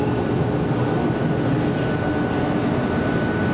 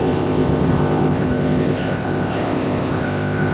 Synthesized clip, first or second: second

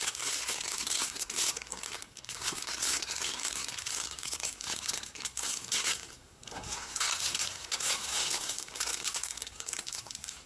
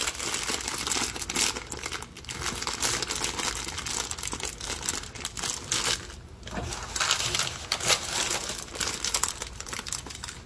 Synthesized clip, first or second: first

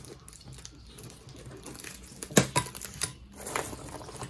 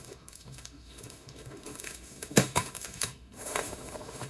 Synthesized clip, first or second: second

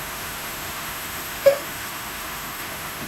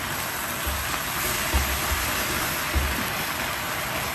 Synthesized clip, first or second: first